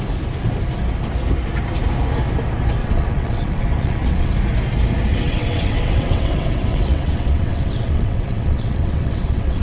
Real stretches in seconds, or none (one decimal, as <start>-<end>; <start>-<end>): 0.0-2.8; 4.3-5.1